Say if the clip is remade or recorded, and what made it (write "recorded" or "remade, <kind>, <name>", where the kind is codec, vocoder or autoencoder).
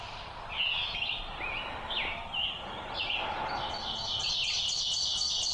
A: recorded